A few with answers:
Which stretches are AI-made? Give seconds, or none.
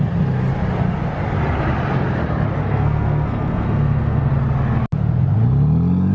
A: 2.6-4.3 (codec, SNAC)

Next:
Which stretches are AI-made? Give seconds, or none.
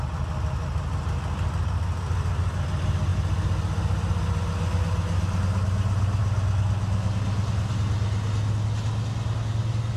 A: none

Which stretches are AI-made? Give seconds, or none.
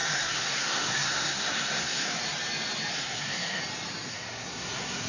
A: 0.0-2.2 (codec, SNAC); 2.9-3.6; 4.1-5.1